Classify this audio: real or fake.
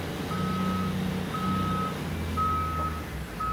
real